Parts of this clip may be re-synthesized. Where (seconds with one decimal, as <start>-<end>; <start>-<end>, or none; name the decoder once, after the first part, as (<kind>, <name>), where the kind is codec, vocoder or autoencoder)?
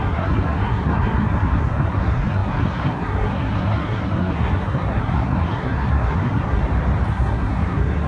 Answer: 0.0-6.6 (codec, SNAC); 7.1-8.1